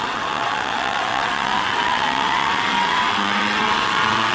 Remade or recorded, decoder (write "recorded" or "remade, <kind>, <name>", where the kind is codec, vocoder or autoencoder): remade, vocoder, WaveNeXt